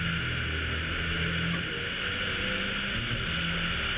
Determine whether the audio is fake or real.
real